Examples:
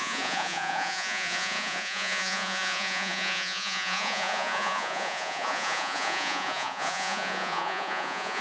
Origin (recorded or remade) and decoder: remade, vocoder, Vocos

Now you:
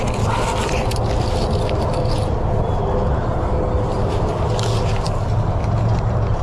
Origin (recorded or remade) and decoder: recorded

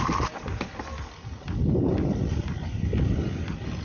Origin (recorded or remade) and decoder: recorded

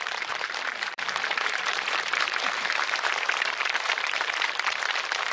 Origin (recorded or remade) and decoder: remade, vocoder, BigVGAN v2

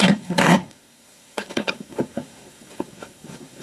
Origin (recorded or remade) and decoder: remade, codec, SNAC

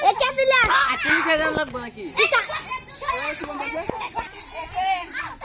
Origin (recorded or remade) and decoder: recorded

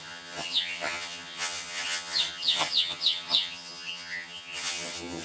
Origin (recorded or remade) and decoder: remade, vocoder, HiFi-GAN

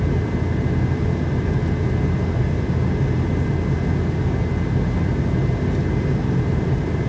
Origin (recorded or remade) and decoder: recorded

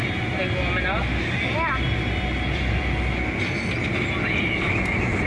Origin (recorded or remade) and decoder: recorded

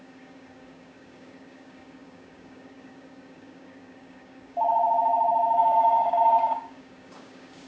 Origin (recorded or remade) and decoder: remade, codec, DAC